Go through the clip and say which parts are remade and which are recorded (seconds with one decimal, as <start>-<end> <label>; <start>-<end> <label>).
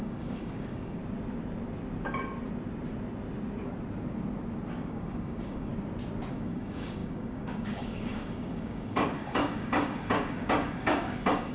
0.0-1.0 remade; 1.0-4.7 recorded; 4.7-5.7 remade; 5.7-6.3 recorded; 6.3-11.5 remade